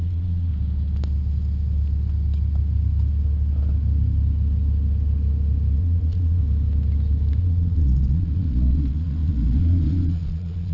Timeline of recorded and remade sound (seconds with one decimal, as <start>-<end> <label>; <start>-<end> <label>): 0.0-0.5 remade; 0.5-5.8 recorded; 5.8-6.4 remade; 6.4-7.4 recorded; 7.4-10.7 remade